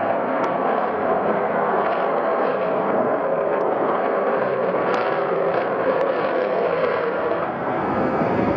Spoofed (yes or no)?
yes